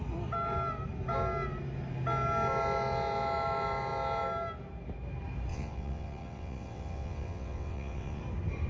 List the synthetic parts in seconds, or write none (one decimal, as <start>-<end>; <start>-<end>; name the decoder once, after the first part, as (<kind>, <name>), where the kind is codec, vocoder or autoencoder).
5.5-8.2 (vocoder, WaveNeXt)